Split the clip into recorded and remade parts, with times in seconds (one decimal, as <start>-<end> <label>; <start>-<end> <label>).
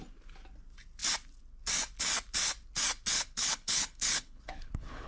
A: 0.0-3.1 recorded; 3.1-5.1 remade